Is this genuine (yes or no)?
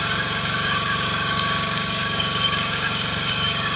no